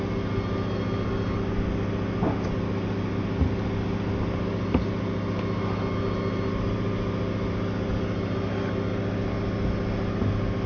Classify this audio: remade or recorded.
recorded